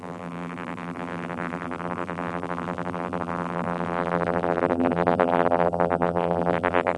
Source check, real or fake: fake